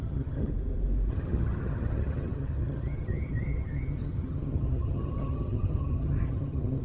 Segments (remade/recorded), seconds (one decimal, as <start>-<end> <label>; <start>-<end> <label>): 0.0-0.5 remade; 0.5-1.1 recorded; 1.1-6.8 remade